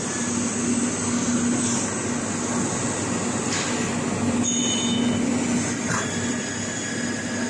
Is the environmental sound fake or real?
real